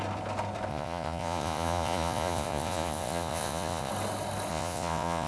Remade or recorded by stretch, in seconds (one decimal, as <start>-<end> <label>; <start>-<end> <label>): 0.0-0.7 recorded; 0.7-3.9 remade; 3.9-4.5 recorded; 4.5-5.3 remade

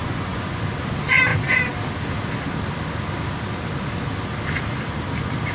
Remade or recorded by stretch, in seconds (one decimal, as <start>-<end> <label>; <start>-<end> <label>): 0.0-0.6 remade; 0.6-5.5 recorded

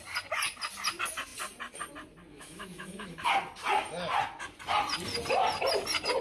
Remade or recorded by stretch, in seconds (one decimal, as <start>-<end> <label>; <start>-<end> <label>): 0.0-2.3 recorded; 2.3-3.3 remade; 3.3-6.2 recorded

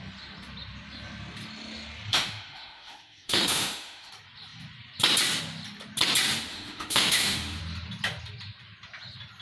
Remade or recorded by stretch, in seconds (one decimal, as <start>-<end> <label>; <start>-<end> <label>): 0.0-2.1 recorded; 2.1-4.1 remade; 4.1-6.5 recorded; 6.5-7.6 remade; 7.6-9.4 recorded

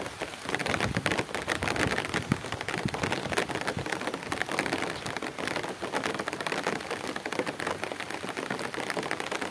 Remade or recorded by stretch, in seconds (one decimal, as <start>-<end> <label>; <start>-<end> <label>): 0.0-9.5 recorded